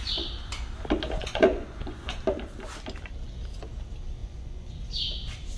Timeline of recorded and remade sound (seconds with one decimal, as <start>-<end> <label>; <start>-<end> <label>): 0.0-1.2 recorded; 1.2-2.2 remade; 2.2-4.2 recorded; 4.2-4.7 remade; 4.7-5.6 recorded